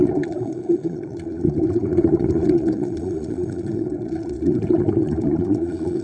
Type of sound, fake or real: fake